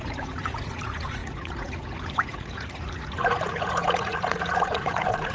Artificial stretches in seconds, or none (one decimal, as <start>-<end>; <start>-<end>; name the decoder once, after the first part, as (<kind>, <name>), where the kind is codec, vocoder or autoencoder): 0.0-5.3 (vocoder, Vocos)